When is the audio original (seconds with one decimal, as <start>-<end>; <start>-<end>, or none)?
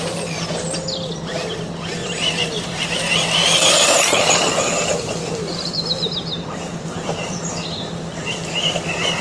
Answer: 0.0-2.0; 2.9-4.9; 7.5-9.2